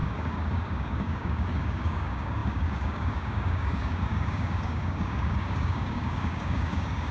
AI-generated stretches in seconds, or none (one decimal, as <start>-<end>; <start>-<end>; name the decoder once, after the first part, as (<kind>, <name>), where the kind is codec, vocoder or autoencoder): 0.0-7.1 (codec, DAC)